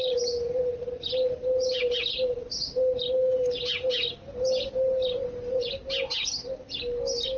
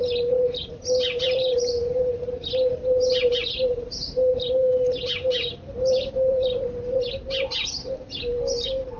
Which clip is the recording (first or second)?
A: first